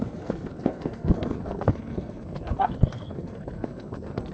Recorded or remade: remade